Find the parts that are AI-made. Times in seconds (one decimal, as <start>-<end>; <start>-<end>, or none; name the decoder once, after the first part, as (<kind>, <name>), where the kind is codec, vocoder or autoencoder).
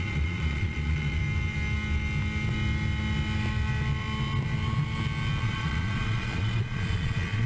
0.0-1.2 (vocoder, Vocos); 5.4-7.5